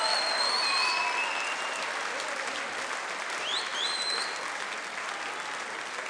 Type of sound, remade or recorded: recorded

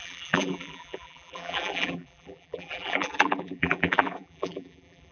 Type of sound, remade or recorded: remade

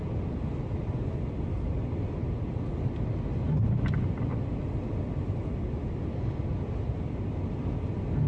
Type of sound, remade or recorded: recorded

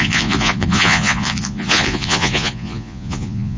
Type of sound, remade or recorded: remade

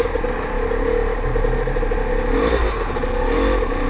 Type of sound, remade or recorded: recorded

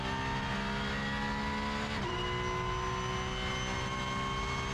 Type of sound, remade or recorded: recorded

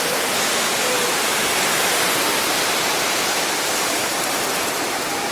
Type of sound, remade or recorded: recorded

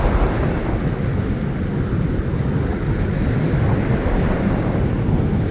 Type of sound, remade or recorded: recorded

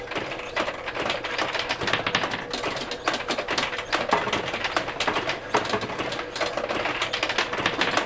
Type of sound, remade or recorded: recorded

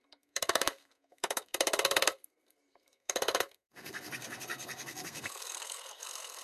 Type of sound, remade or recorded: remade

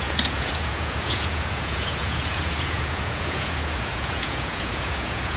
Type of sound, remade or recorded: remade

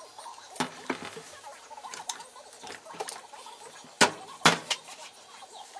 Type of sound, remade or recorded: recorded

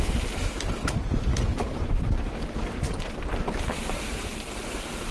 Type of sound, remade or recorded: remade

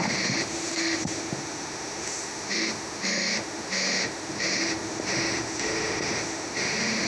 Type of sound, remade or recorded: remade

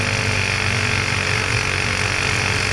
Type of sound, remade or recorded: recorded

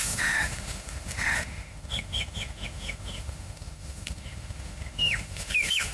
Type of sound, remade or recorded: remade